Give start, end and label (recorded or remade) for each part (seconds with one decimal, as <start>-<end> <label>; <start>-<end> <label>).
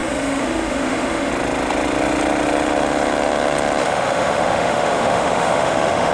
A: 0.0-1.3 remade; 1.3-3.8 recorded; 3.8-6.1 remade